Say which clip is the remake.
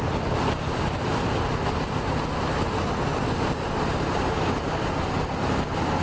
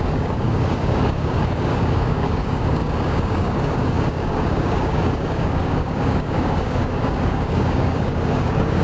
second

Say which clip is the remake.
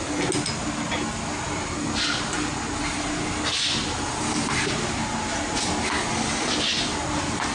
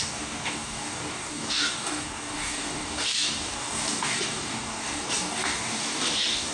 second